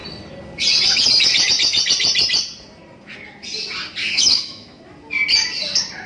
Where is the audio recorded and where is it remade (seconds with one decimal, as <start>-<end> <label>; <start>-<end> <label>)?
0.0-4.0 recorded; 4.0-4.8 remade; 4.8-6.1 recorded

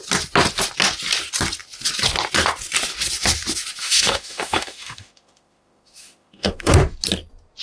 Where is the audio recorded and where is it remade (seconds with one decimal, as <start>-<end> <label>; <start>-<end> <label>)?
0.0-3.8 recorded; 3.8-6.7 remade; 6.7-7.6 recorded

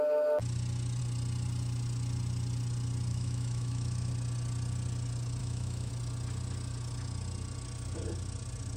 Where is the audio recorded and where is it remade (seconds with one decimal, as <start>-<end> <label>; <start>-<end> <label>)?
0.0-3.1 recorded; 3.1-4.1 remade; 4.1-5.4 recorded; 5.4-5.9 remade; 5.9-8.8 recorded

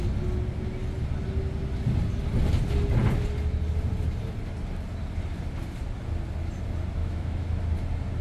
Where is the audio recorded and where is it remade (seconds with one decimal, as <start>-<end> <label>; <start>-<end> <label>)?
0.0-7.0 recorded; 7.0-7.5 remade; 7.5-8.2 recorded

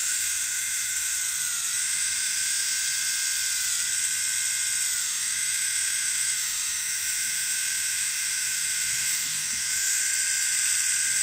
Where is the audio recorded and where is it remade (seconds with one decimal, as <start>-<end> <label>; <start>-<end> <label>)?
0.0-1.2 remade; 1.2-1.8 recorded; 1.8-2.7 remade; 2.7-5.0 recorded; 5.0-10.0 remade; 10.0-11.2 recorded